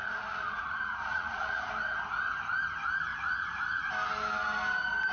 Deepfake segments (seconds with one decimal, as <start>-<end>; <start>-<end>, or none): 0.0-1.7; 3.1-3.9